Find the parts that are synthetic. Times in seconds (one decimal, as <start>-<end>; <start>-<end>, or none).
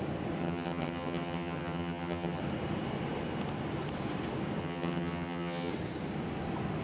0.4-2.4; 4.6-5.7